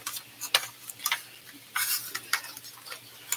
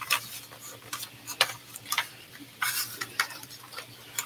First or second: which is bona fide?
first